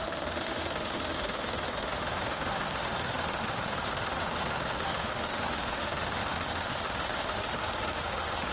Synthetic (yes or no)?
yes